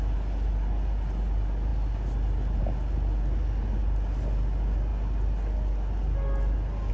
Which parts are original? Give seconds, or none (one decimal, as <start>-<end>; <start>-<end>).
0.0-6.9